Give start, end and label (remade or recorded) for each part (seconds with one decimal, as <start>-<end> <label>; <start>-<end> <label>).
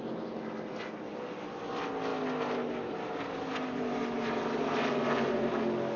0.0-1.1 recorded; 1.1-1.6 remade; 1.6-2.1 recorded; 2.1-6.0 remade